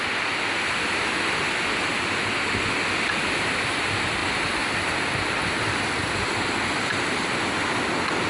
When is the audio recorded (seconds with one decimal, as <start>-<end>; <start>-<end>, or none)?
0.0-8.3